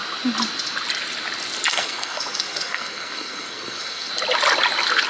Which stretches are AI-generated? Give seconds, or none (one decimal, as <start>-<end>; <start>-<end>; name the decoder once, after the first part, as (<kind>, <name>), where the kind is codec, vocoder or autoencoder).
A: 1.7-4.1 (codec, SNAC)

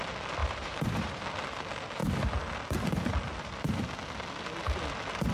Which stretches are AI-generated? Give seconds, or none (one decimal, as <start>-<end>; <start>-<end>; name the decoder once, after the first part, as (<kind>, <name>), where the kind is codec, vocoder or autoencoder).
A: 0.4-1.2 (vocoder, BigVGAN v2)

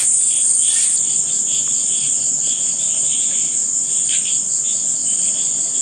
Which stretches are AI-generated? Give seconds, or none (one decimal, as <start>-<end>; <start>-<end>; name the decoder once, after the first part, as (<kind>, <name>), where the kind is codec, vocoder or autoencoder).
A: 0.0-3.0 (vocoder, BigVGAN v2); 3.6-5.3

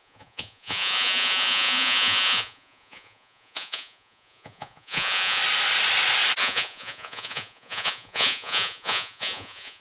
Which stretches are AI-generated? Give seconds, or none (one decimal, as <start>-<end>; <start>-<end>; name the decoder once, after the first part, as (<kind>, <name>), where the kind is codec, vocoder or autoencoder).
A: 0.0-5.4 (vocoder, Vocos); 6.4-9.8

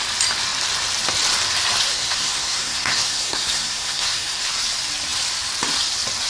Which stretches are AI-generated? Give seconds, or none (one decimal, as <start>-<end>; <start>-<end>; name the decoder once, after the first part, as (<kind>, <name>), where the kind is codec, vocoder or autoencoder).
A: 1.9-4.4 (codec, SNAC)

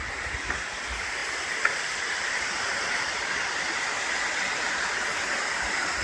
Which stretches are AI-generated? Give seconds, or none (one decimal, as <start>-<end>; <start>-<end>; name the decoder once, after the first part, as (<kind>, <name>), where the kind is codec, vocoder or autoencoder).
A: none